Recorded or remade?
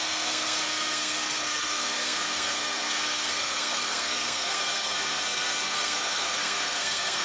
remade